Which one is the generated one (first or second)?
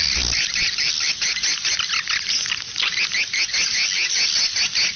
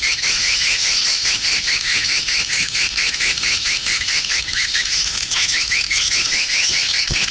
second